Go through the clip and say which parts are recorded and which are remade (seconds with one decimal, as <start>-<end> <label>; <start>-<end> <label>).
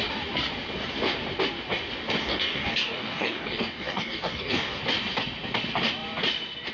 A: 0.0-2.2 recorded; 2.2-4.8 remade; 4.8-6.7 recorded